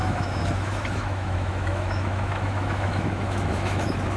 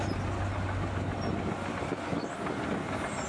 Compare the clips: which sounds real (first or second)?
second